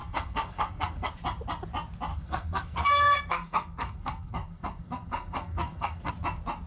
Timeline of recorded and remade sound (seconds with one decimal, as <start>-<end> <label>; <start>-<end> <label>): 0.0-1.1 remade; 1.1-2.1 recorded; 2.1-6.1 remade; 6.1-6.7 recorded

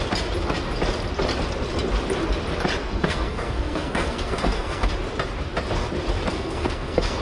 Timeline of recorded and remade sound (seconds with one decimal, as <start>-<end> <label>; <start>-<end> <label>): 0.0-2.8 recorded; 2.8-4.9 remade; 4.9-6.3 recorded; 6.3-7.2 remade

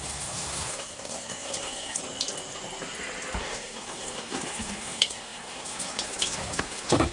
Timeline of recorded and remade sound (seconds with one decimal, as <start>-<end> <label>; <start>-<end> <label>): 0.0-2.0 remade; 2.0-3.4 recorded; 3.4-7.1 remade

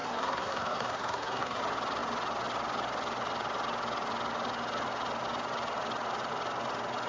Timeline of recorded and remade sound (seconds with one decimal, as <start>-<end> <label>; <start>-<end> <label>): 0.0-1.6 remade; 1.6-7.1 recorded

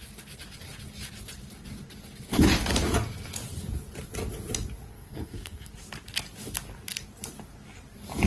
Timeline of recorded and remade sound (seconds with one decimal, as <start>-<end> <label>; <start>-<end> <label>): 0.0-4.9 recorded; 4.9-5.7 remade; 5.7-8.3 recorded

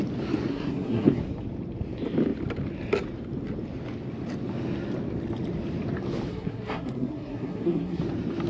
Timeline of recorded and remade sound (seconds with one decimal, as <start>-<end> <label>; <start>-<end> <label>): 0.0-0.5 recorded; 0.5-1.2 remade; 1.2-6.3 recorded; 6.3-8.0 remade; 8.0-8.5 recorded